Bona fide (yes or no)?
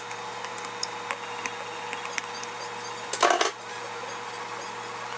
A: yes